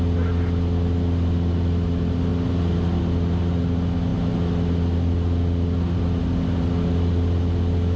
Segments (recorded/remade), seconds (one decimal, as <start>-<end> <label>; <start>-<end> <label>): 0.0-8.0 recorded